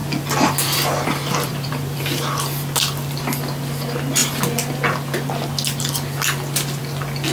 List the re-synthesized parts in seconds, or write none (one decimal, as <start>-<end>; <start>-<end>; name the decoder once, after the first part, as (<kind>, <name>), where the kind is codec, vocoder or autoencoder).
0.0-3.2 (vocoder, BigVGAN v2)